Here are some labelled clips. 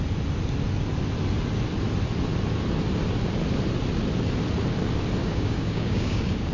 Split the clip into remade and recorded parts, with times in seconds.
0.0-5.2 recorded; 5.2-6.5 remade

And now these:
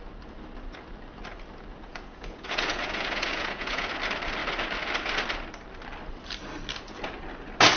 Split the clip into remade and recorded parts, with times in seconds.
0.0-1.7 recorded; 1.7-4.0 remade; 4.0-7.8 recorded

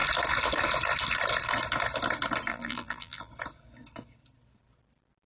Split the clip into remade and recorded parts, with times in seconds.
0.0-2.5 recorded; 2.5-3.3 remade; 3.3-5.3 recorded

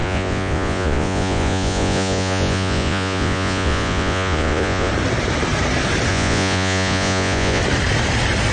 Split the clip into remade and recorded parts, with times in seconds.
0.0-4.9 remade; 4.9-6.1 recorded; 6.1-7.6 remade; 7.6-8.5 recorded